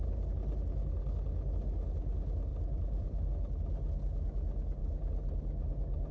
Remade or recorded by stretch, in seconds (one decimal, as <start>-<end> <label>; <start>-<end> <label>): 0.0-2.5 recorded; 2.5-3.3 remade; 3.3-6.1 recorded